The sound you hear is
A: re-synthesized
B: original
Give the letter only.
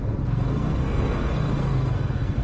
A